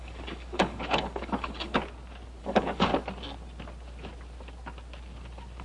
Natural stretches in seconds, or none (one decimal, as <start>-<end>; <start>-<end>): 1.8-2.4; 2.9-5.6